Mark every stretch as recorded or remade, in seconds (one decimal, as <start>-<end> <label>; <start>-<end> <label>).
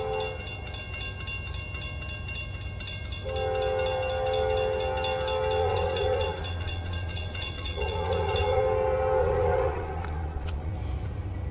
0.0-5.6 recorded; 5.6-8.6 remade; 8.6-9.2 recorded; 9.2-10.7 remade; 10.7-11.5 recorded